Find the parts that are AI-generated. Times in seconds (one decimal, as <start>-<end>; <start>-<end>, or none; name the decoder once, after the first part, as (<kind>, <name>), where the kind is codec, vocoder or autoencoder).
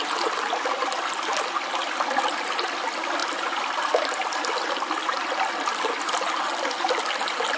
none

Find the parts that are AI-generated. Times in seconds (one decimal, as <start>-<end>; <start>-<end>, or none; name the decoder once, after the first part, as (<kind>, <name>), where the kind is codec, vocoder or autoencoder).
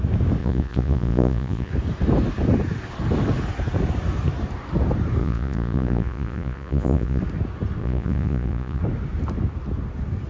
0.4-1.7 (vocoder, Vocos); 5.2-7.2; 7.8-8.8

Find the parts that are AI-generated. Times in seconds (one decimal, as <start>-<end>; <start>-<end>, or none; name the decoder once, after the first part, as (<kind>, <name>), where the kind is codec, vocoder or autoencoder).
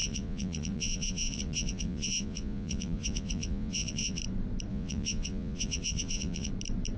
0.0-4.2 (vocoder, Vocos); 4.7-6.5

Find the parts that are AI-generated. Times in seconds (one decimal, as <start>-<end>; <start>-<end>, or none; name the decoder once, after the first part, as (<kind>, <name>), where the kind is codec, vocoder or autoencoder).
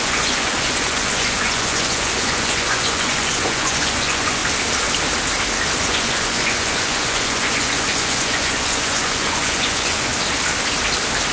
0.0-4.4 (vocoder, Vocos); 5.8-10.1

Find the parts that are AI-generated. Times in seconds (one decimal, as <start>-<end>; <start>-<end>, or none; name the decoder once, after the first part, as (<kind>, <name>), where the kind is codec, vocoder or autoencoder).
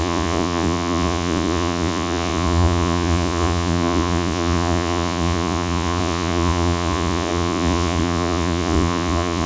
0.0-9.5 (vocoder, Vocos)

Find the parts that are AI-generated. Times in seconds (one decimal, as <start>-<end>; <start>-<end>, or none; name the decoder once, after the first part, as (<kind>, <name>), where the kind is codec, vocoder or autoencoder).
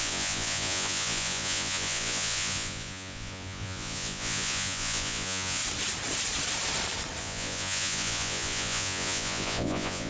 0.0-5.6 (vocoder, Vocos); 7.2-10.1